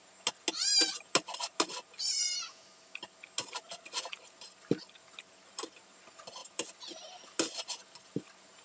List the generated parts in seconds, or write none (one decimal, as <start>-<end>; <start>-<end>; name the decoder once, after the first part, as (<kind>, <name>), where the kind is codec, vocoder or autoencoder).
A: none

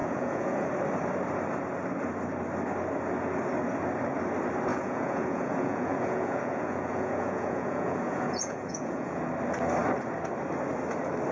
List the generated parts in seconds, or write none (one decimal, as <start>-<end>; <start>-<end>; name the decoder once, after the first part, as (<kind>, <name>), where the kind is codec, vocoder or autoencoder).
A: 0.0-0.7 (vocoder, Vocos); 4.7-9.2

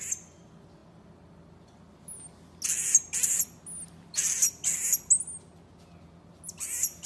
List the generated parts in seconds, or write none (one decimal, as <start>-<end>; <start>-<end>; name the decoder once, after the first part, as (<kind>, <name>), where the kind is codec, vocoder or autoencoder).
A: none